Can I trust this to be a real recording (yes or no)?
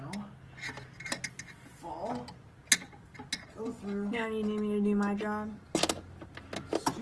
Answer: yes